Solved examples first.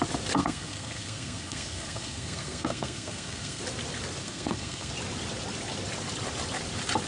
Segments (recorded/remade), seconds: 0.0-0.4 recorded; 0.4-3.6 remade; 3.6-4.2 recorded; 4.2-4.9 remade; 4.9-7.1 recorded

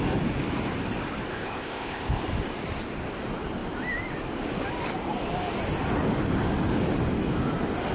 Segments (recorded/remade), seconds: 0.0-1.3 recorded; 1.3-2.2 remade; 2.2-7.9 recorded

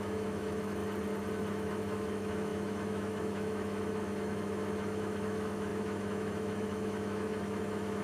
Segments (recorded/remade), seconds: 0.0-0.8 remade; 0.8-1.4 recorded; 1.4-8.0 remade

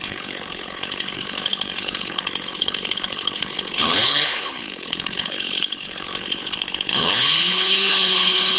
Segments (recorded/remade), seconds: 0.0-8.6 remade

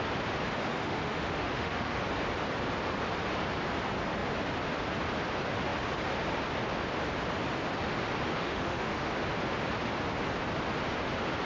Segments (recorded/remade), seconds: 0.0-0.6 recorded; 0.6-2.0 remade; 2.0-8.3 recorded; 8.3-9.1 remade; 9.1-11.5 recorded

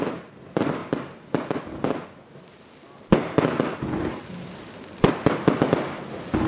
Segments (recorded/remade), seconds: 0.0-6.5 recorded